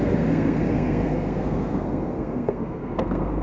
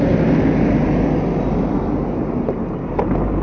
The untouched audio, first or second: second